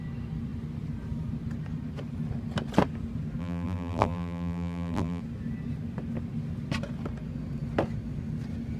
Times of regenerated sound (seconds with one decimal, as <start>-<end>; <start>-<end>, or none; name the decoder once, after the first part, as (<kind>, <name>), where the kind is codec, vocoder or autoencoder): 3.4-5.2 (vocoder, BigVGAN v2)

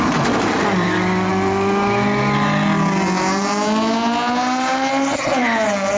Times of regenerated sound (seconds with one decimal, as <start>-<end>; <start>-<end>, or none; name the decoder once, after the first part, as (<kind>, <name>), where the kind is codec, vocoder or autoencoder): none

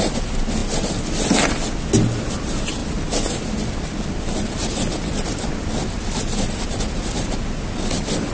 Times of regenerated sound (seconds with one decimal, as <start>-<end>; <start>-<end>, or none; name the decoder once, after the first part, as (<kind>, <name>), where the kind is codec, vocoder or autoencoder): none

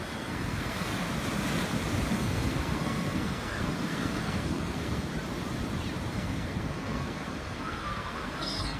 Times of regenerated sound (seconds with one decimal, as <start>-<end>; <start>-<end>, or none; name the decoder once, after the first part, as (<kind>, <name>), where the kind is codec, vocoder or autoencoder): 0.0-0.9 (codec, SNAC); 2.1-5.1; 6.1-8.8

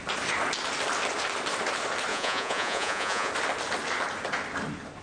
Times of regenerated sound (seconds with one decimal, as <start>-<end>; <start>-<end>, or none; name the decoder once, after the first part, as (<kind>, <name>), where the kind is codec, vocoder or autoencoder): 2.1-3.3 (vocoder, Vocos)

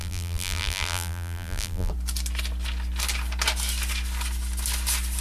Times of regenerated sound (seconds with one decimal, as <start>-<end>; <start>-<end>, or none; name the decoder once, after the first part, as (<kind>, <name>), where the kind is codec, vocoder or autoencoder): 0.0-1.9 (vocoder, BigVGAN v2)

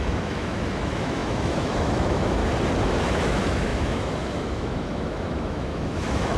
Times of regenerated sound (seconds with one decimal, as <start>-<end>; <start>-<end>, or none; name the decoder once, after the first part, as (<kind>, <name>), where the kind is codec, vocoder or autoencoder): 0.0-2.4 (autoencoder, DAC-VAE); 3.0-6.4

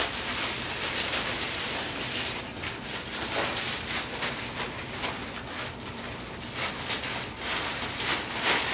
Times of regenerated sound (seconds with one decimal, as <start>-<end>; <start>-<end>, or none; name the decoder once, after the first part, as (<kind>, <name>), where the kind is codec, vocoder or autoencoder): none